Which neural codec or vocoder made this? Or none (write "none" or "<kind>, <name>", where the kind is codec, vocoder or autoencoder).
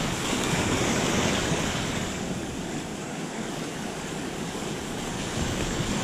codec, DAC